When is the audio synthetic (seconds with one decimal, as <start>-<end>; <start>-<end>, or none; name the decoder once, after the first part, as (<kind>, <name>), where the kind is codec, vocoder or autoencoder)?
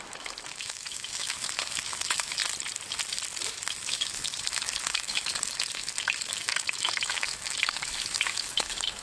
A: 0.0-2.4 (autoencoder, DAC-VAE); 3.5-9.0